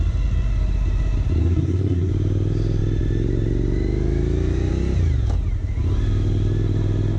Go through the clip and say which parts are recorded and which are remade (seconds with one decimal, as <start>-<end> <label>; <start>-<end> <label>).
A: 0.0-1.4 recorded; 1.4-2.1 remade; 2.1-7.2 recorded